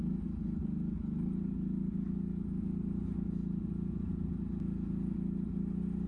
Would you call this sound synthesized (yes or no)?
no